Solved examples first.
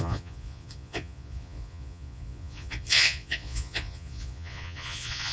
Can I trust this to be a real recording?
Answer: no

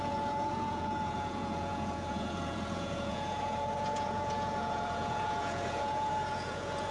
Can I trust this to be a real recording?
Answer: no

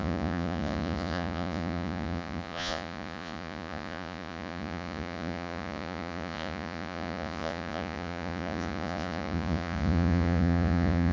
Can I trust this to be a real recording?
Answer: no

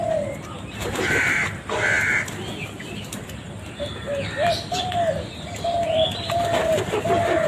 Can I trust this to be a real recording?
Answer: yes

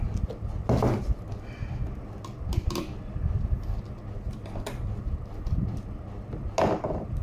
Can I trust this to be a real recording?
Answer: yes